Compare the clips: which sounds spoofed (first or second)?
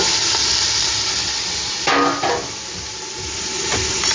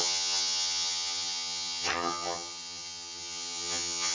second